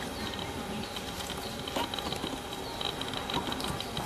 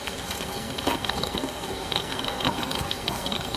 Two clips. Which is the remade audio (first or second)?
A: second